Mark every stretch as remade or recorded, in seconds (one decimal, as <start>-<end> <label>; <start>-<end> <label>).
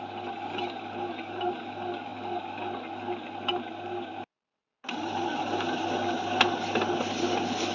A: 0.0-7.7 recorded